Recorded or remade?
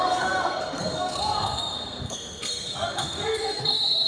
remade